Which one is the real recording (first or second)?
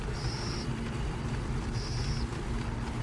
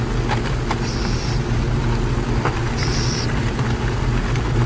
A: second